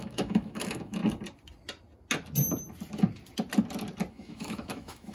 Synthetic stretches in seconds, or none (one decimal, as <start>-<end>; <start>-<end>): 0.0-1.0; 4.1-5.1